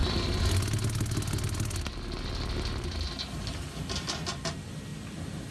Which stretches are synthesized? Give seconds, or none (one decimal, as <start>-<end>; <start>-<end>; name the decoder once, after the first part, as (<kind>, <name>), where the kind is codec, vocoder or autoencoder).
none